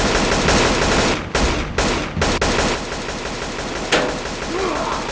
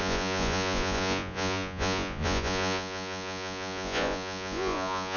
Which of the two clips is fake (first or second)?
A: second